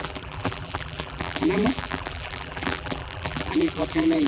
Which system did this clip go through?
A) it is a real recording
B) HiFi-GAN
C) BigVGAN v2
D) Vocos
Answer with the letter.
C